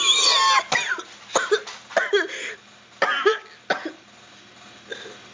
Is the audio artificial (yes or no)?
no